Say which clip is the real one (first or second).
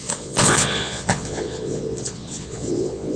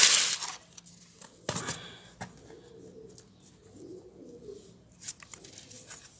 second